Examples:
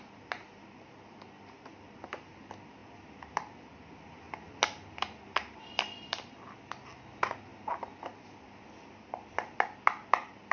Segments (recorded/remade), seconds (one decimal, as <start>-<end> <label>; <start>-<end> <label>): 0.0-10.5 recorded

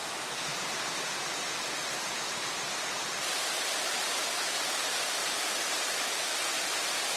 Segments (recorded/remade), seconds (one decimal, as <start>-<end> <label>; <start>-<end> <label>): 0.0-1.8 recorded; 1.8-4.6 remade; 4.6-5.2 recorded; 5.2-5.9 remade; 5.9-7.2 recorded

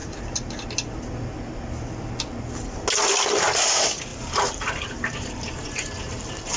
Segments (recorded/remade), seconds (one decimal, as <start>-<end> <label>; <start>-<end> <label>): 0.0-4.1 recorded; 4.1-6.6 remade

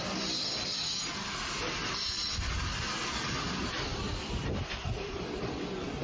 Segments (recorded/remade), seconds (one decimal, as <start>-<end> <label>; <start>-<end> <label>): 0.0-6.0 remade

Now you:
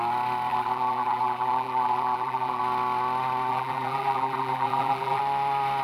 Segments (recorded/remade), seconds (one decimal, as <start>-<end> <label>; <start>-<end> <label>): 0.0-0.5 recorded; 0.5-2.6 remade; 2.6-3.5 recorded; 3.5-5.2 remade; 5.2-5.8 recorded

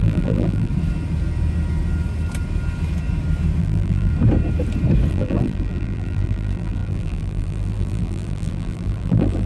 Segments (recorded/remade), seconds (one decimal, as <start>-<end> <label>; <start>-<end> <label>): 0.0-0.7 remade; 0.7-3.6 recorded; 3.6-4.1 remade; 4.1-5.1 recorded; 5.1-9.5 remade

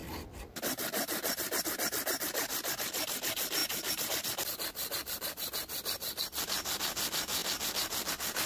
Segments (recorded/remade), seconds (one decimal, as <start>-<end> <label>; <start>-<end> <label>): 0.0-1.6 remade; 1.6-3.6 recorded; 3.6-4.1 remade; 4.1-5.0 recorded; 5.0-5.5 remade; 5.5-8.5 recorded

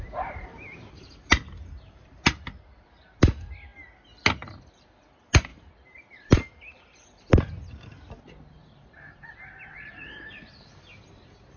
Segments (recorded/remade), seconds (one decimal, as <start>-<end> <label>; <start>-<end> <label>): 0.0-5.5 recorded; 5.5-6.5 remade; 6.5-11.6 recorded